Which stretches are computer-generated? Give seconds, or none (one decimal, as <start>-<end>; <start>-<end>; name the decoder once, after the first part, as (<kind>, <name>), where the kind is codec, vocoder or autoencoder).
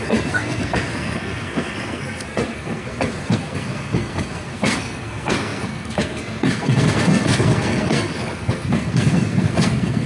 0.0-10.1 (codec, SNAC)